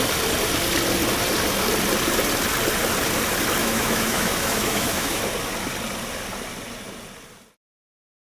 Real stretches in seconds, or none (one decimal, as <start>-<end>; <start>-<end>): 0.0-3.6; 5.2-8.2

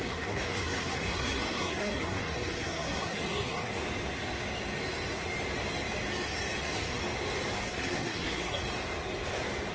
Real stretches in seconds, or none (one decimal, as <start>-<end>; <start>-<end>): 3.8-6.6; 7.0-7.6; 8.6-9.7

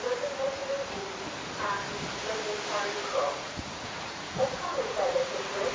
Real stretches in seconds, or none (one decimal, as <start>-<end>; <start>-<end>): 0.0-3.1